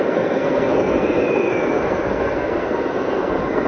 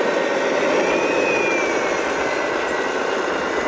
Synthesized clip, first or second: first